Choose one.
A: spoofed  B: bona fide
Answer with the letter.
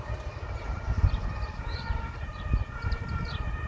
A